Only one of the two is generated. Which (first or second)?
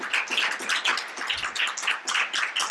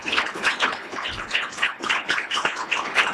second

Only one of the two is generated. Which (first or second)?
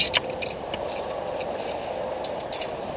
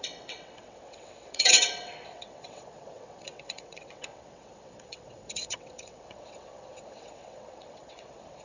second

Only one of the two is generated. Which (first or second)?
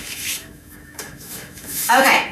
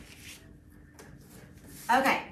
first